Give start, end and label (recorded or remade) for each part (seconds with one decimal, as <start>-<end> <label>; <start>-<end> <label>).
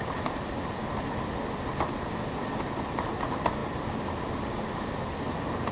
0.0-5.7 recorded